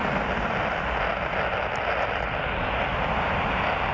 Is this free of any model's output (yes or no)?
yes